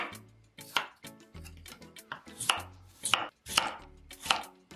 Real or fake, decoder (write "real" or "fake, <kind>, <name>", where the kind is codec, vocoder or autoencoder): real